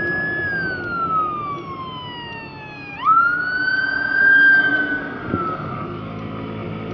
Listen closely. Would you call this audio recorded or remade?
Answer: recorded